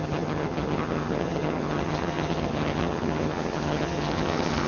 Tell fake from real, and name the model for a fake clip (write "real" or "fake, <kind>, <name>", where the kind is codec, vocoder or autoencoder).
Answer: fake, vocoder, HiFi-GAN